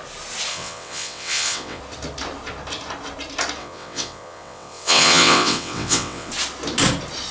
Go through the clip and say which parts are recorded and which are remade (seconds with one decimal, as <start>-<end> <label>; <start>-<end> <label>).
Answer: 0.0-0.5 recorded; 0.5-1.8 remade; 1.8-3.6 recorded; 3.6-6.3 remade; 6.3-7.3 recorded